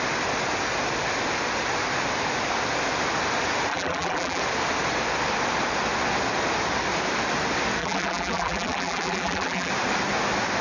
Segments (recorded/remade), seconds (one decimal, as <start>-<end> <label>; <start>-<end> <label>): 0.0-3.7 recorded; 3.7-4.4 remade; 4.4-7.8 recorded; 7.8-9.7 remade; 9.7-10.6 recorded